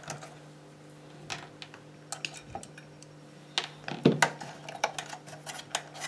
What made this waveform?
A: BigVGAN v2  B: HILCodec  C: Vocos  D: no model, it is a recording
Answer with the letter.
D